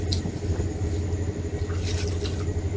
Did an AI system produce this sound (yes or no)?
no